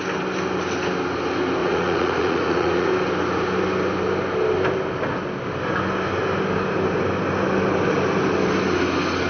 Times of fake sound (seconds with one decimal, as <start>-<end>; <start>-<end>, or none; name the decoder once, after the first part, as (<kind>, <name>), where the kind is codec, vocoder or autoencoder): 1.6-2.9 (vocoder, Vocos)